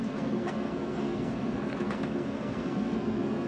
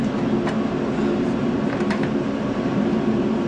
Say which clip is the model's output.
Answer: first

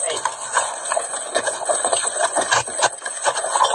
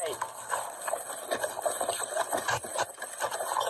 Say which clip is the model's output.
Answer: first